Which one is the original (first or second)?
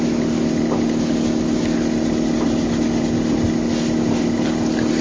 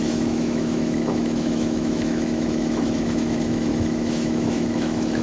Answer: first